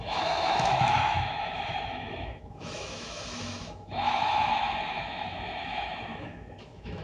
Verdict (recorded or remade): remade